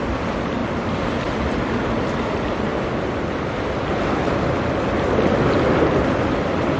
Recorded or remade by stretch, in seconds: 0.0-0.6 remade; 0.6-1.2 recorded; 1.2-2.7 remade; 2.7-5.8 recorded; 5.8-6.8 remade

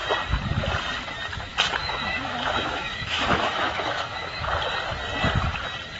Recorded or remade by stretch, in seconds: 0.0-1.5 recorded; 1.5-4.5 remade; 4.5-6.0 recorded

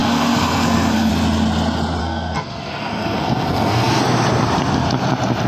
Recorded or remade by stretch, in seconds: 0.0-1.1 remade; 1.1-2.0 recorded; 2.0-4.0 remade; 4.0-5.5 recorded